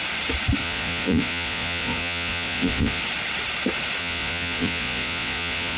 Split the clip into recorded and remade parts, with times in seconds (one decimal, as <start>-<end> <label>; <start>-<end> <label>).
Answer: 0.0-0.6 recorded; 0.6-3.0 remade; 3.0-4.0 recorded; 4.0-5.8 remade